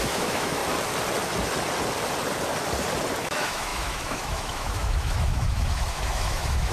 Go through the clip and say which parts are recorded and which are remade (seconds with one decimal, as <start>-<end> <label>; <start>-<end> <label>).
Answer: 0.0-0.6 remade; 0.6-3.2 recorded; 3.2-6.7 remade